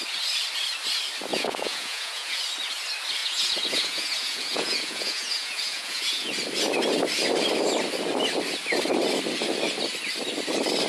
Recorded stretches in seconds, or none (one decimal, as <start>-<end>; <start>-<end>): 0.0-1.3; 2.4-3.2; 6.3-10.9